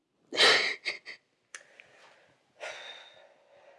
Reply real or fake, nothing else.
real